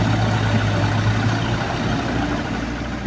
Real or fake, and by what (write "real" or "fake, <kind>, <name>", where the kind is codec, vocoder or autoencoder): real